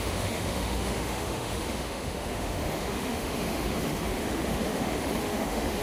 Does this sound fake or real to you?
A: fake